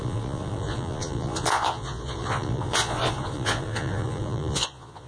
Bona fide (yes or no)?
no